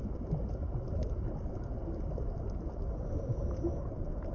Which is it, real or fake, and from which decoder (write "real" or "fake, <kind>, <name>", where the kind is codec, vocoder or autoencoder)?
real